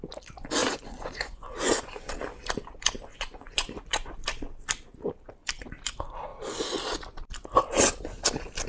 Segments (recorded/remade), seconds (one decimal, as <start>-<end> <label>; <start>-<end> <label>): 0.0-0.6 recorded; 0.6-2.1 remade; 2.1-3.1 recorded; 3.1-4.1 remade; 4.1-8.7 recorded